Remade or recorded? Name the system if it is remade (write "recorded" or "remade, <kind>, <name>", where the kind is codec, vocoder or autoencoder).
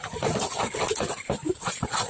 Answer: recorded